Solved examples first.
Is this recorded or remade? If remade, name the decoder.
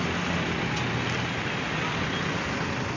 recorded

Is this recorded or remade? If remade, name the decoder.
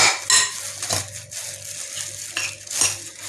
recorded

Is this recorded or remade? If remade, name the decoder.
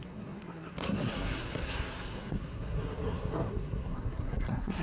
remade, codec, SNAC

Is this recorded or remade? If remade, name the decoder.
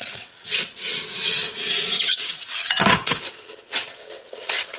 remade, vocoder, WaveNeXt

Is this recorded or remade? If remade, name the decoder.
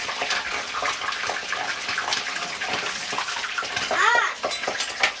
remade, vocoder, BigVGAN v2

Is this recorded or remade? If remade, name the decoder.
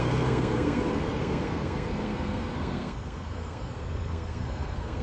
remade, codec, SNAC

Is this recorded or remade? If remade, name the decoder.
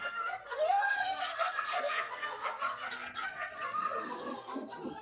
remade, codec, SNAC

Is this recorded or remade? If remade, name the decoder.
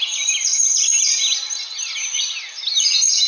recorded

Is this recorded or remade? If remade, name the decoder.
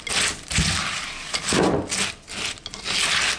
recorded